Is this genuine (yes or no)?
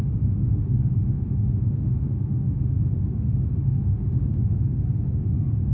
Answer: no